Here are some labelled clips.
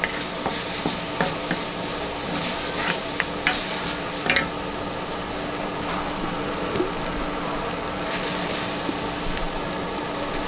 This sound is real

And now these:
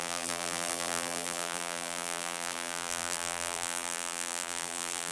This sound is fake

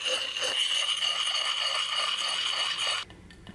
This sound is real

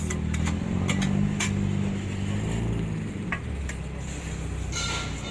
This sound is real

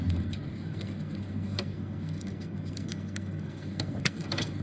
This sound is fake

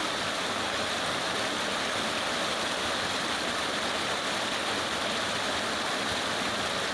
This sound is real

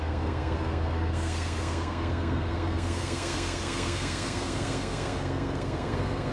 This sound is fake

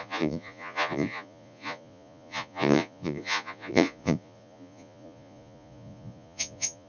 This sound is fake